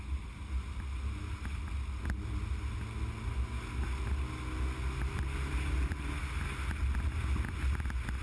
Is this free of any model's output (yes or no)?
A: yes